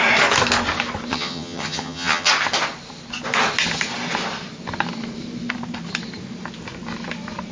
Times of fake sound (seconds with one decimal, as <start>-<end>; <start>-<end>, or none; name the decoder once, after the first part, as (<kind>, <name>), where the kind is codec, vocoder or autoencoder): 1.1-2.3 (vocoder, HiFi-GAN)